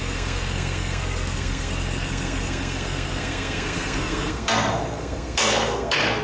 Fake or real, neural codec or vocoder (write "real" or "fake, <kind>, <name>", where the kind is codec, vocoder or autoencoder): fake, codec, SNAC